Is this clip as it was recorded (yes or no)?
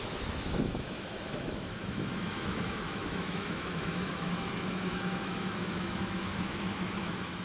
no